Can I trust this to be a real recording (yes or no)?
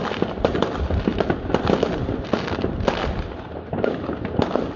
yes